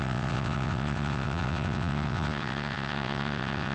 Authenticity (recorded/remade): remade